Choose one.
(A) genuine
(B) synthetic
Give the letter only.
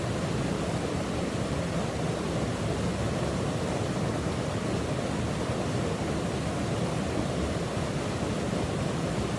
A